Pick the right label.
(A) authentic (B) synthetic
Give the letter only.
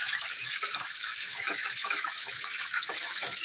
B